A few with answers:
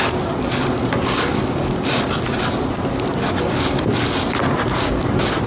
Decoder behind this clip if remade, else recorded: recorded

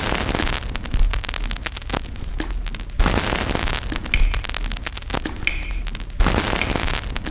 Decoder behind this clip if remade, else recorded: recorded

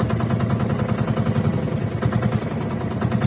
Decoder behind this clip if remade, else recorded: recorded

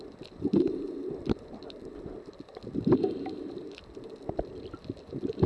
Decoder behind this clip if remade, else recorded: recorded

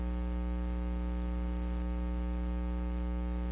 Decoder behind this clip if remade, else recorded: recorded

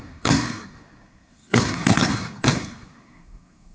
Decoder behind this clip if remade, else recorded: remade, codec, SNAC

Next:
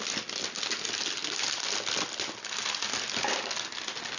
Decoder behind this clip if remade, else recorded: recorded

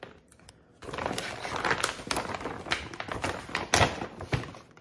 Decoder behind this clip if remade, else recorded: recorded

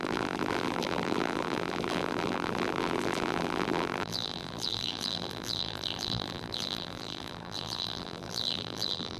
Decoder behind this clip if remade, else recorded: remade, vocoder, BigVGAN v2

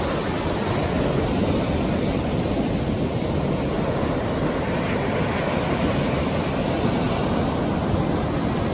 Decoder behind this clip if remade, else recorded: recorded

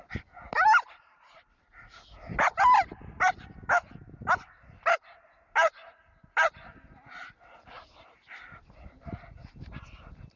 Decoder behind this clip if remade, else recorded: recorded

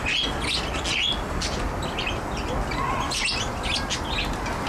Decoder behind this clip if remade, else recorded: recorded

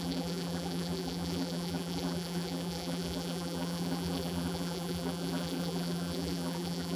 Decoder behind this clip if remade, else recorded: remade, vocoder, BigVGAN v2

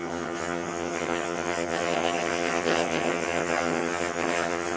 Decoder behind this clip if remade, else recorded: remade, vocoder, HiFi-GAN